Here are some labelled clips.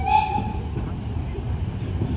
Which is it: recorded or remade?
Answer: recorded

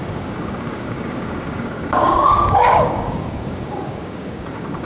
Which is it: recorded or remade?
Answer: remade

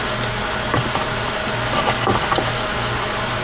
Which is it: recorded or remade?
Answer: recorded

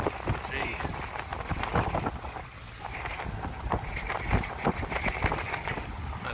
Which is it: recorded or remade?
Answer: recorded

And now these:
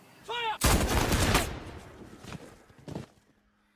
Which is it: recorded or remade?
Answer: recorded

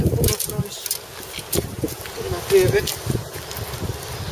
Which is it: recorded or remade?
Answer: recorded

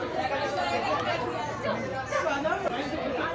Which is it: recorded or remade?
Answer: recorded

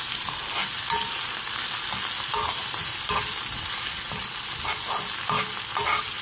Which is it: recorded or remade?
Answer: recorded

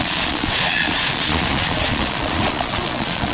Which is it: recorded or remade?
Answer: remade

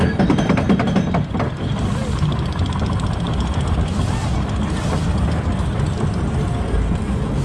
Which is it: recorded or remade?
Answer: recorded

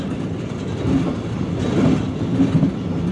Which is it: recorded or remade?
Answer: recorded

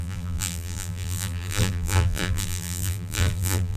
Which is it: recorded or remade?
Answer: remade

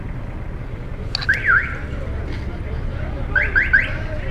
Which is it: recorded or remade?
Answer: recorded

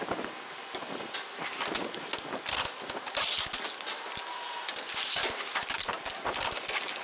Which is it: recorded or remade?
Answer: recorded